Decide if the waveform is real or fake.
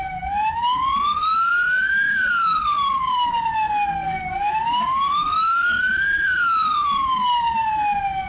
real